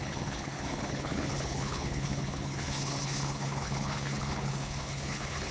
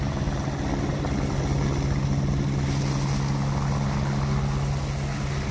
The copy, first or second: first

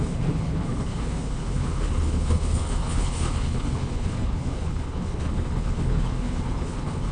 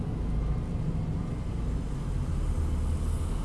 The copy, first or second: first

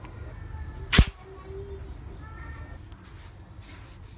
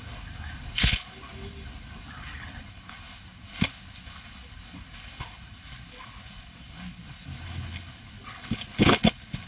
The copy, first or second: second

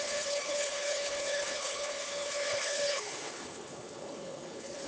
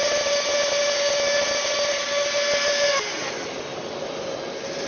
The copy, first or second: first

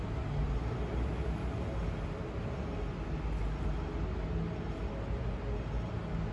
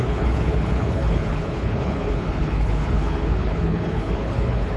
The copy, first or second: second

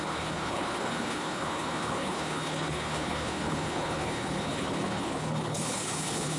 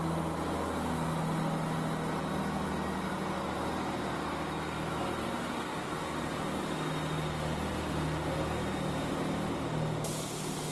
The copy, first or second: first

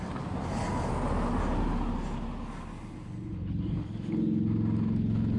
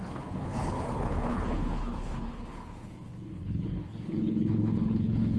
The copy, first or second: second